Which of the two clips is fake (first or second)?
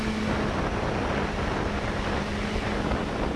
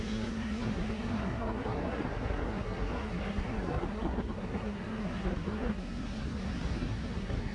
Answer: second